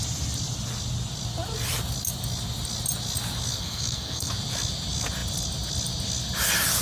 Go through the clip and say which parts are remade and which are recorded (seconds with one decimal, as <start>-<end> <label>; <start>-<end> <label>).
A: 0.0-3.5 recorded; 3.5-4.3 remade; 4.3-6.8 recorded